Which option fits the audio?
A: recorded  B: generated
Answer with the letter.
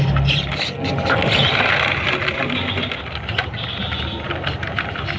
A